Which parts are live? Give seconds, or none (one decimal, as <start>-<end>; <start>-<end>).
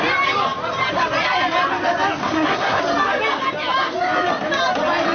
0.0-2.2; 2.8-5.1